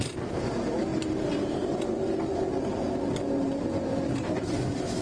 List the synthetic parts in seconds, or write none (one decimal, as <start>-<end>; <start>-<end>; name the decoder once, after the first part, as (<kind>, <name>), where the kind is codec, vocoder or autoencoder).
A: none